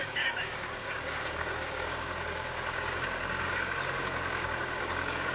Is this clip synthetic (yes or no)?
yes